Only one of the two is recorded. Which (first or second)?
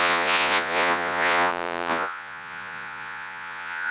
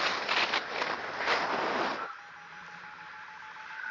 second